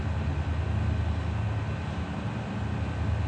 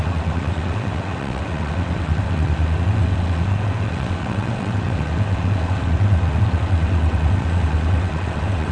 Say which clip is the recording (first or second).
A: first